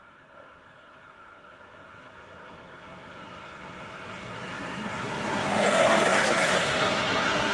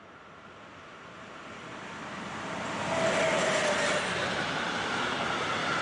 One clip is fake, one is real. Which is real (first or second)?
second